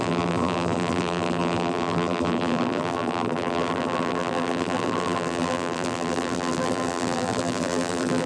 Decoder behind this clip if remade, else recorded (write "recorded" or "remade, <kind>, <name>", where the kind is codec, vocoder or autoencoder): remade, vocoder, BigVGAN v2